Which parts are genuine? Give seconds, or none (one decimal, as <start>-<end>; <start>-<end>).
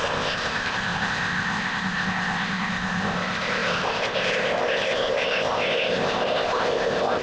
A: none